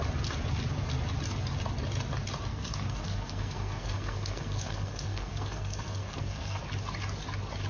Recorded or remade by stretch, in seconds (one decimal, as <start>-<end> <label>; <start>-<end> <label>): 0.0-2.5 recorded; 2.5-6.6 remade; 6.6-7.7 recorded